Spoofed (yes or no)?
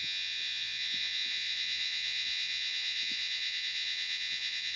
yes